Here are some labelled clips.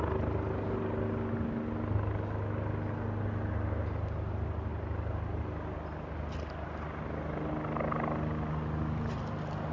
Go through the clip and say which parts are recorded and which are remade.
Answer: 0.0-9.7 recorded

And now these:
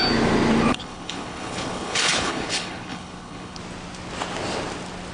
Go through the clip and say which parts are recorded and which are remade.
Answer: 0.0-0.7 recorded; 0.7-3.6 remade; 3.6-5.1 recorded

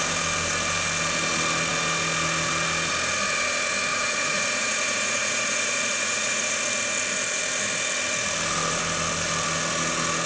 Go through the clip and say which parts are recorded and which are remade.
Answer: 0.0-3.9 recorded; 3.9-6.6 remade; 6.6-10.3 recorded

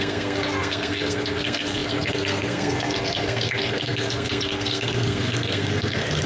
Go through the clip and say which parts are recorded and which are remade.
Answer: 0.0-6.3 remade

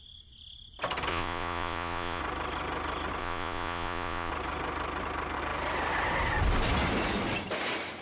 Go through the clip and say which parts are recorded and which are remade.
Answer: 0.0-1.1 recorded; 1.1-2.2 remade; 2.2-3.2 recorded; 3.2-4.3 remade; 4.3-8.0 recorded

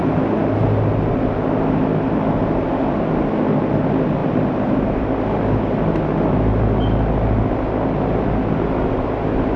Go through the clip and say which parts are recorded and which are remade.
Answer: 0.0-9.6 recorded

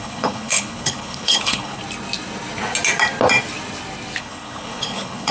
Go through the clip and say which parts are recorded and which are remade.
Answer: 0.0-1.8 remade; 1.8-4.2 recorded; 4.2-5.3 remade

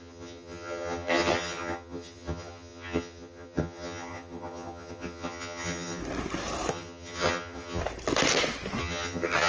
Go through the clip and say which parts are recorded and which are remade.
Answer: 0.0-6.0 remade; 6.0-6.7 recorded; 6.7-7.8 remade; 7.8-8.8 recorded; 8.8-9.5 remade